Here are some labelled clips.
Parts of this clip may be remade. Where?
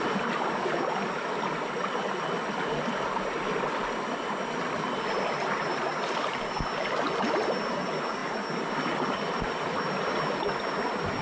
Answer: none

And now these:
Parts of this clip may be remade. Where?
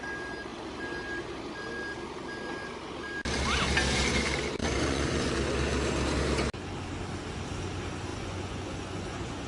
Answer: 4.6-5.3 (vocoder, Vocos); 8.1-9.5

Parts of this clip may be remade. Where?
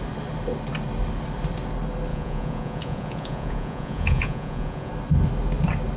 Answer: 2.1-4.9 (vocoder, Vocos)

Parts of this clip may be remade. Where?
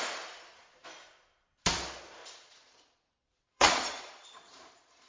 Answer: 2.2-5.1 (vocoder, Vocos)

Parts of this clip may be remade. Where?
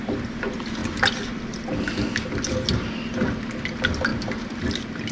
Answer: none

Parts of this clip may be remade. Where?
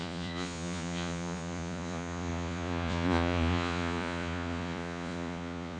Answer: 0.0-5.8 (vocoder, Vocos)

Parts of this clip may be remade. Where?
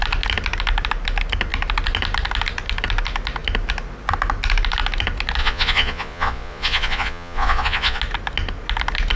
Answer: 5.4-8.0 (vocoder, Vocos)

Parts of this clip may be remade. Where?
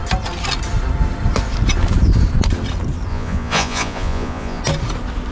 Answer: 3.1-4.6 (vocoder, Vocos)